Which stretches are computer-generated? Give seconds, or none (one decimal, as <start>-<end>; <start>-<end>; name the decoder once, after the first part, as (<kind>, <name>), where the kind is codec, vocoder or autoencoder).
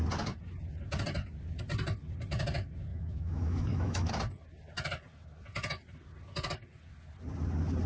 2.9-4.1 (autoencoder, DAC-VAE)